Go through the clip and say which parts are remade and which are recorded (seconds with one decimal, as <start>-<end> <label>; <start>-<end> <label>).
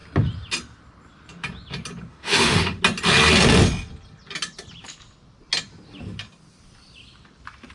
0.0-2.1 recorded; 2.1-2.8 remade; 2.8-7.7 recorded